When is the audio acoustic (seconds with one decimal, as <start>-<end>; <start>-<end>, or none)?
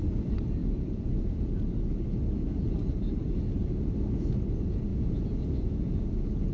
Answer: 0.0-0.6; 1.6-4.9; 6.1-6.5